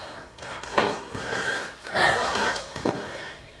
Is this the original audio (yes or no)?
no